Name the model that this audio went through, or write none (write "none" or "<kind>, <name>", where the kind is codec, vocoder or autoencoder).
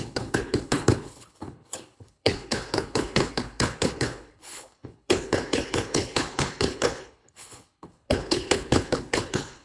codec, HILCodec